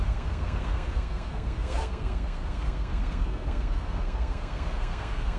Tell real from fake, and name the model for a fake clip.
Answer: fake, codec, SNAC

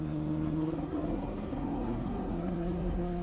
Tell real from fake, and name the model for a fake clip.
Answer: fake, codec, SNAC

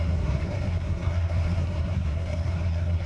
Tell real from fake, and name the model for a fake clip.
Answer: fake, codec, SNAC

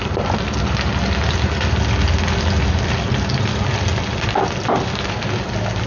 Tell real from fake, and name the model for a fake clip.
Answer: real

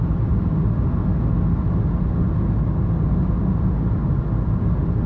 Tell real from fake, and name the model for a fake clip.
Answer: real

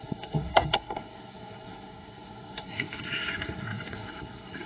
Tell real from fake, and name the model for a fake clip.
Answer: fake, codec, SNAC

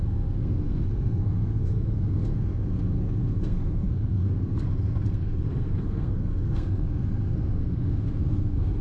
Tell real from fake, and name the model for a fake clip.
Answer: fake, codec, SNAC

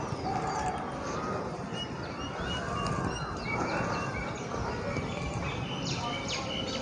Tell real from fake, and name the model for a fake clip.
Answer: real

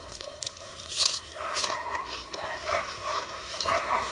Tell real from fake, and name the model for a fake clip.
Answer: fake, codec, SNAC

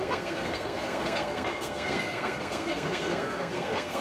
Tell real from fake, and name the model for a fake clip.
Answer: fake, codec, SNAC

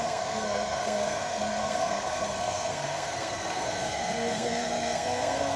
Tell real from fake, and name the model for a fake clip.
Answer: fake, codec, SNAC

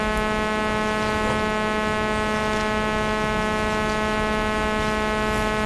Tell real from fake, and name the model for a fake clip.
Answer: real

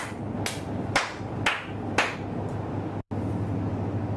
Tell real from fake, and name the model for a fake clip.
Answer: real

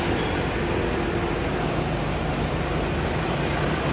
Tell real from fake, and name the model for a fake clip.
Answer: real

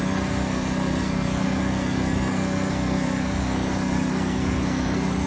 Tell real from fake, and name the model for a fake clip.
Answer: fake, codec, SNAC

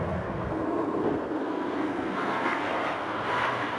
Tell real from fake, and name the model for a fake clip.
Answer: fake, codec, SNAC